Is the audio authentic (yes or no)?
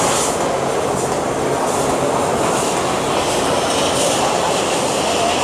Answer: yes